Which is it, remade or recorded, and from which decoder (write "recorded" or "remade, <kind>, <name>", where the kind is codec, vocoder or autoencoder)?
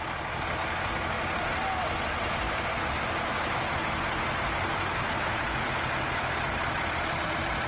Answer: recorded